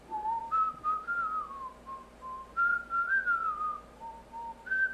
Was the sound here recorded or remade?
recorded